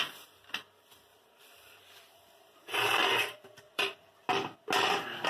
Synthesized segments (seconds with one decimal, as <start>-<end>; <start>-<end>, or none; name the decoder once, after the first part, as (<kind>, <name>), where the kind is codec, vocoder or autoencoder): 1.1-4.3 (vocoder, BigVGAN v2)